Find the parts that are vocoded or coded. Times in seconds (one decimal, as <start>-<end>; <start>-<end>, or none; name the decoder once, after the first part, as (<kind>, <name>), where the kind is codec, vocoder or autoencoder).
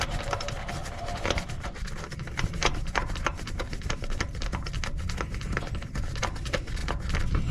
0.0-4.5 (vocoder, BigVGAN v2); 6.2-6.8